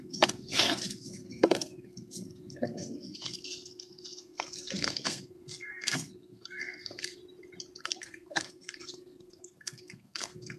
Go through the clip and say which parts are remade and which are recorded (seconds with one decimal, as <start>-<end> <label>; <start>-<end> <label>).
0.0-7.2 remade; 7.2-7.8 recorded; 7.8-10.6 remade